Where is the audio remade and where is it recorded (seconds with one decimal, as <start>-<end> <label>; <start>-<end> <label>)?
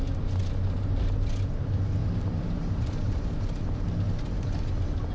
0.0-2.0 recorded; 2.0-3.2 remade; 3.2-5.1 recorded